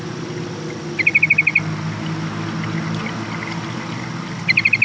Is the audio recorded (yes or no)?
yes